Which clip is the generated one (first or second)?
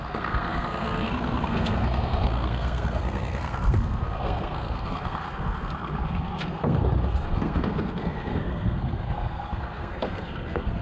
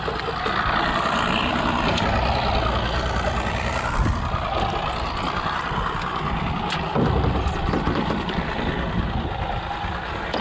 first